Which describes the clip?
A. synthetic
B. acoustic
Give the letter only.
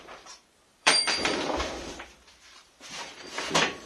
A